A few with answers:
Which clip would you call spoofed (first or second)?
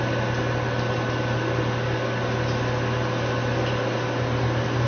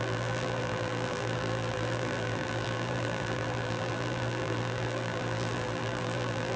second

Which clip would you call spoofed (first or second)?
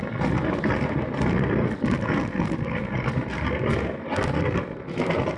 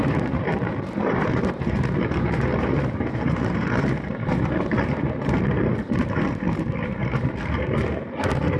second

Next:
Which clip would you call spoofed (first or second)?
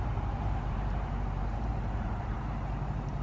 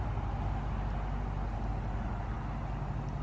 first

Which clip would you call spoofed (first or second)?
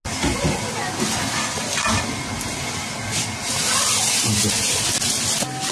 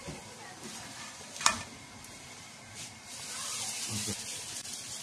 second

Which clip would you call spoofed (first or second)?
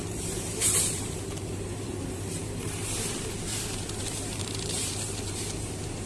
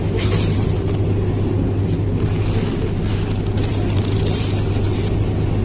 first